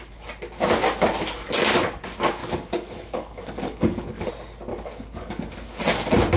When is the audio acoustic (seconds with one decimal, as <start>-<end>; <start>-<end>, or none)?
0.0-2.4; 4.3-4.7; 5.8-6.4